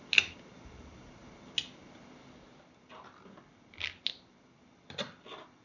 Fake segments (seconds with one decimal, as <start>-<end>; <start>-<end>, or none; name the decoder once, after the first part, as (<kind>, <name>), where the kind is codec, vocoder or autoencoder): none